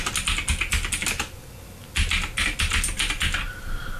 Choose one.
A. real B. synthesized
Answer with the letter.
A